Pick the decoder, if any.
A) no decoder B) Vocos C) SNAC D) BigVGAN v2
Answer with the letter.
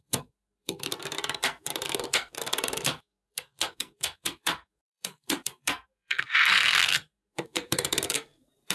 C